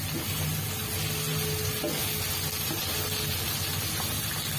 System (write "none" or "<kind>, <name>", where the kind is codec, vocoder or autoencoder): none